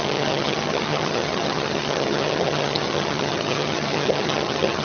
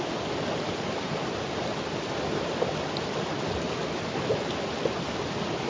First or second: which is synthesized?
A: first